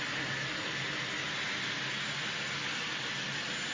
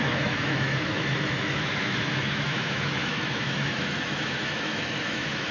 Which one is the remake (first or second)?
second